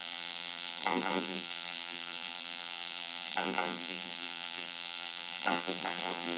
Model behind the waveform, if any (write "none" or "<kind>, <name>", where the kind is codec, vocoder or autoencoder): vocoder, BigVGAN v2